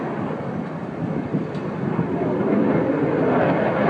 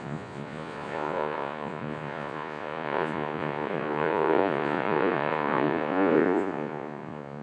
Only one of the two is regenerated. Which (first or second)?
second